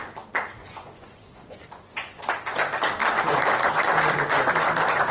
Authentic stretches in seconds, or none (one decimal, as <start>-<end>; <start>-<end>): 0.0-0.6; 2.3-5.1